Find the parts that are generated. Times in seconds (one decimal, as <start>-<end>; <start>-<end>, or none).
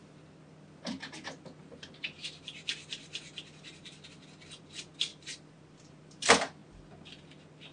5.1-5.9